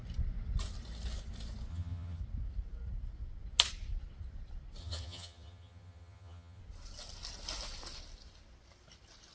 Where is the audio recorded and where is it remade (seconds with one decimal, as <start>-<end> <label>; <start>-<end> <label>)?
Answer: 0.0-1.7 recorded; 1.7-2.2 remade; 2.2-4.8 recorded; 4.8-6.6 remade; 6.6-9.3 recorded